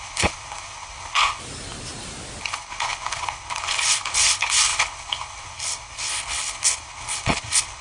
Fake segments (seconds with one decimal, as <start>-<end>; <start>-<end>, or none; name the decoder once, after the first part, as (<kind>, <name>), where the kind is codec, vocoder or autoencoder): 0.0-1.4 (codec, HILCodec); 2.4-7.8